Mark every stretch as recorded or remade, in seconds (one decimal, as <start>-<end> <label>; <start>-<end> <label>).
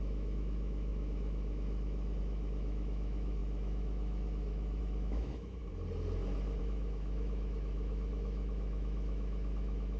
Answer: 0.0-5.6 remade; 5.6-6.6 recorded; 6.6-10.0 remade